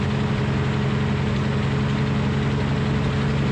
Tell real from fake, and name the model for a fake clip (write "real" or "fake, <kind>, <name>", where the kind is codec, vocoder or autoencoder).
real